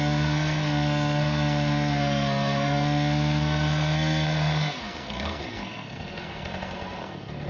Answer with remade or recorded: remade